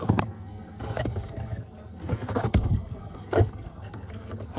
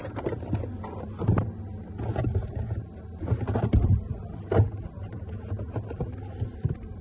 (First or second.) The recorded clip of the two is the second